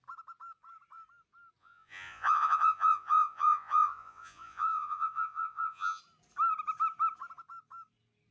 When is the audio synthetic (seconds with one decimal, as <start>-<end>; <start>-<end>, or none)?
1.6-6.0